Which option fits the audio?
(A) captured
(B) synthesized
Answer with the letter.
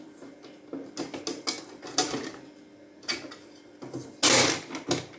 A